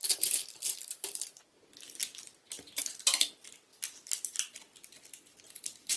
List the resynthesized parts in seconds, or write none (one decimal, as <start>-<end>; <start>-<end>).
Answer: 0.0-2.0; 2.8-3.7; 5.6-6.0